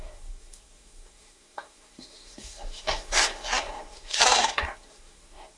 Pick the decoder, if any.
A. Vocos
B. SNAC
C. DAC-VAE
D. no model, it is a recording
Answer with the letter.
B